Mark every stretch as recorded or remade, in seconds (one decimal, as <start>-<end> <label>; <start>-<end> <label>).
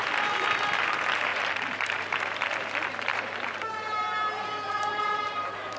0.0-1.3 recorded; 1.3-2.2 remade; 2.2-3.1 recorded; 3.1-5.8 remade